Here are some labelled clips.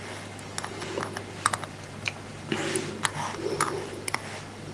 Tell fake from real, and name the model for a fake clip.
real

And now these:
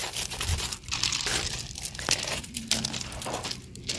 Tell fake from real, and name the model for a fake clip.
fake, vocoder, BigVGAN v2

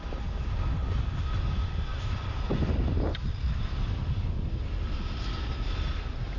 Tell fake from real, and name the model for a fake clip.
real